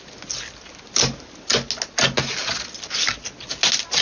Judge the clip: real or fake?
real